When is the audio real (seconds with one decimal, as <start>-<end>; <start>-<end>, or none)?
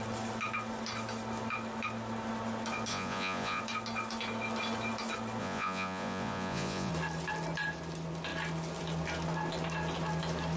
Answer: 0.0-2.9; 3.6-5.4; 6.9-10.6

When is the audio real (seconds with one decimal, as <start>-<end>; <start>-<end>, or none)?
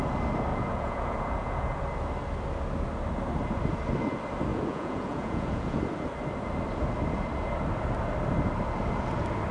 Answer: 0.0-0.5; 1.8-4.5; 5.8-9.5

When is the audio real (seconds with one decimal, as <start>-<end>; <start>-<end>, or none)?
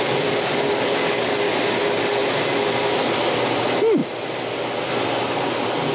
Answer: 0.0-5.9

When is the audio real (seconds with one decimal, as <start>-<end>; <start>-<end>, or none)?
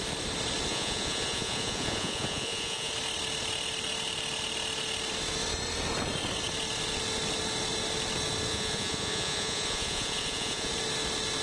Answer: 0.0-0.7; 2.9-8.5; 10.7-11.4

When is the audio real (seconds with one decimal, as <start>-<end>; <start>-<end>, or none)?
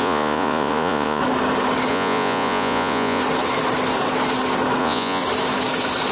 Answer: 1.2-1.9; 3.2-4.8; 5.2-6.1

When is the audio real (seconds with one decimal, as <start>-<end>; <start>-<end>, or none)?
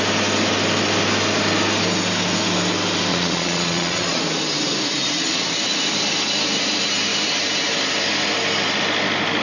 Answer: 0.0-3.1; 4.2-9.4